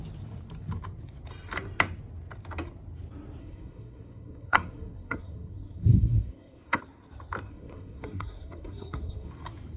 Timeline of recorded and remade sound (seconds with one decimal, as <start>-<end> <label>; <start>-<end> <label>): 0.0-3.4 recorded; 3.4-6.8 remade; 6.8-7.5 recorded; 7.5-9.3 remade; 9.3-9.8 recorded